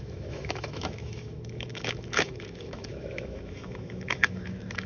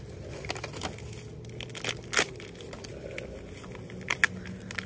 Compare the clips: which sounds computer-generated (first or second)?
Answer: first